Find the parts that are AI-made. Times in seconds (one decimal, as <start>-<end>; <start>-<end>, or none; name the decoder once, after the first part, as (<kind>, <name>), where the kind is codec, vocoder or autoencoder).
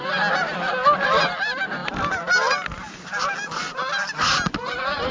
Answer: none